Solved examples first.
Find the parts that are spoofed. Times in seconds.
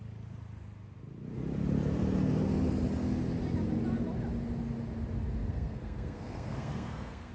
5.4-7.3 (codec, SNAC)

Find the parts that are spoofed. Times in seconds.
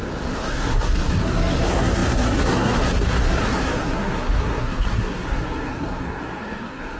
0.0-7.0 (codec, SNAC)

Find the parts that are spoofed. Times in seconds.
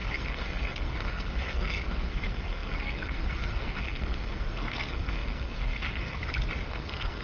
0.0-6.2 (codec, SNAC); 6.7-7.2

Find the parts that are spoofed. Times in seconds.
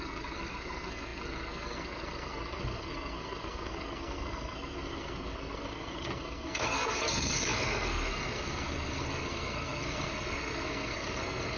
0.0-11.6 (codec, SNAC)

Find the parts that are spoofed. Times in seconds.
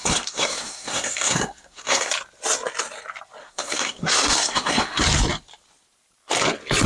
0.0-2.1 (codec, SNAC); 3.4-5.0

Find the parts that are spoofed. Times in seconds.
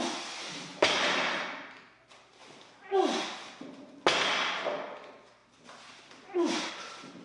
none